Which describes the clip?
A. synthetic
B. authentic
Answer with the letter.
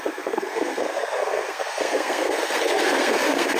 A